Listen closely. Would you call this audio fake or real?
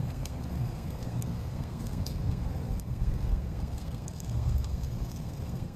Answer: fake